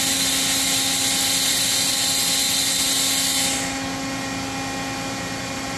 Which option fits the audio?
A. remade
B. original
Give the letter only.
B